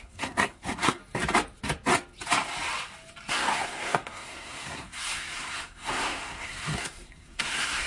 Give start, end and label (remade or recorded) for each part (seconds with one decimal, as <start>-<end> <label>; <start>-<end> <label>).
0.0-1.0 remade; 1.0-3.3 recorded; 3.3-7.9 remade